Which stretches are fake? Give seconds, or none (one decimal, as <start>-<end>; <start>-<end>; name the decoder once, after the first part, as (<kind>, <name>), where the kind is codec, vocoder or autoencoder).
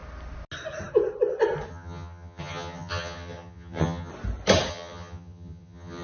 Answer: 1.7-4.1 (vocoder, HiFi-GAN); 4.7-6.0